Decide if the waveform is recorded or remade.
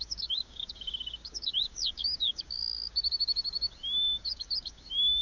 remade